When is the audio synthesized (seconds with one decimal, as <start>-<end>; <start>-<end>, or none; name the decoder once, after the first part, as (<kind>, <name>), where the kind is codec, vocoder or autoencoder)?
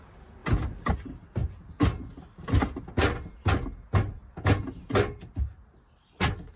none